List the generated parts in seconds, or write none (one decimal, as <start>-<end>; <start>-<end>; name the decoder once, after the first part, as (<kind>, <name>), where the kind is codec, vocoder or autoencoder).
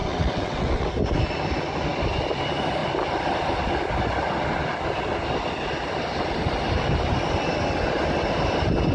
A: 0.0-0.9 (vocoder, WaveNeXt)